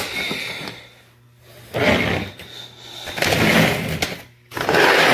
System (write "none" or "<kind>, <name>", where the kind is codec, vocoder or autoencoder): none